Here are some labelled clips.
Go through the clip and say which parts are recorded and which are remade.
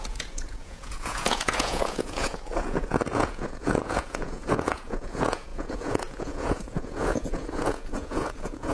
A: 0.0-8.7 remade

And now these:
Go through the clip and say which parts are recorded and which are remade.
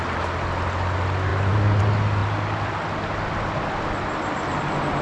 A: 0.0-5.0 recorded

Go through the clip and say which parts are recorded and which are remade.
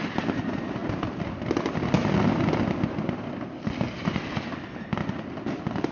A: 0.0-5.9 recorded